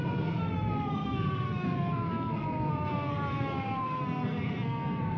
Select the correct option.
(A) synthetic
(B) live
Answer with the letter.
A